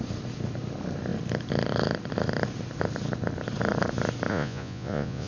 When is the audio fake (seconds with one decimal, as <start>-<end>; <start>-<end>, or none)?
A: 4.3-5.3